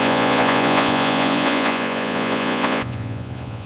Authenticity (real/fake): fake